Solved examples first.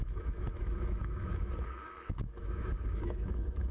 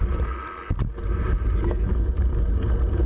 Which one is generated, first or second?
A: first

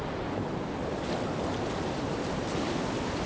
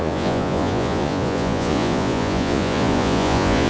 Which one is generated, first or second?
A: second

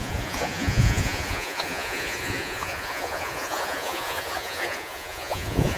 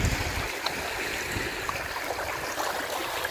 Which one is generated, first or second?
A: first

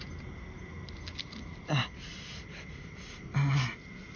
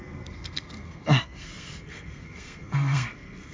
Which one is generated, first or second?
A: second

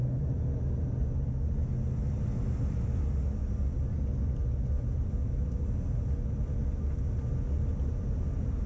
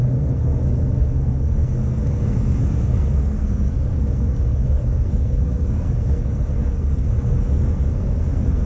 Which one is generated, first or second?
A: second